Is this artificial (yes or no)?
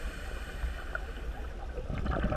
no